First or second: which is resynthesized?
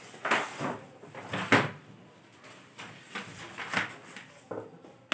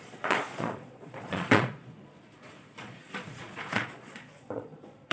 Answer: second